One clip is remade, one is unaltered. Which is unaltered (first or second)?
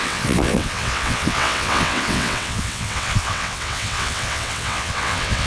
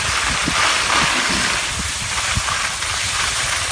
second